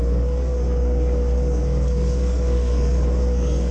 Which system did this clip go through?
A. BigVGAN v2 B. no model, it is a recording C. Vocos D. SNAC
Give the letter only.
D